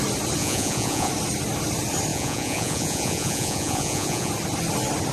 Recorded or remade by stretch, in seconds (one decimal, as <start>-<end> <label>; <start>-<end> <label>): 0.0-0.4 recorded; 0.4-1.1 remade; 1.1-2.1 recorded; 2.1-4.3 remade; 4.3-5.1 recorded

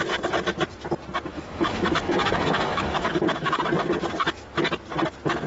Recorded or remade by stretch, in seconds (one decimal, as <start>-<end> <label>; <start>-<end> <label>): 0.0-1.3 recorded; 1.3-3.6 remade; 3.6-5.5 recorded

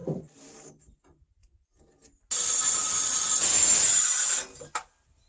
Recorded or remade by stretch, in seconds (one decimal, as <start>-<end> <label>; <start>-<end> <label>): 0.0-5.3 recorded

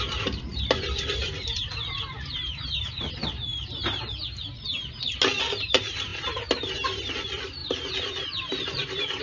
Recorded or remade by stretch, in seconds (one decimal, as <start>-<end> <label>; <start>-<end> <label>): 0.0-3.5 remade; 3.5-5.6 recorded; 5.6-6.1 remade; 6.1-7.1 recorded; 7.1-9.2 remade